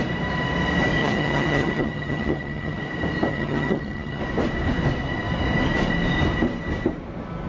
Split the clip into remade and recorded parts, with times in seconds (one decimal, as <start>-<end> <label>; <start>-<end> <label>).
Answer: 0.0-1.0 recorded; 1.0-2.8 remade; 2.8-3.3 recorded; 3.3-4.2 remade; 4.2-7.5 recorded